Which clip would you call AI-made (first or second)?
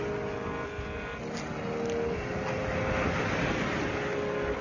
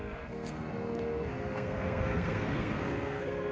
second